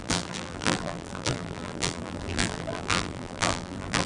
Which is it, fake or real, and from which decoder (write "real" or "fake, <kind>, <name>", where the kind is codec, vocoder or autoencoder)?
fake, vocoder, BigVGAN v2